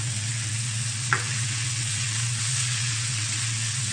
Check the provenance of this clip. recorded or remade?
remade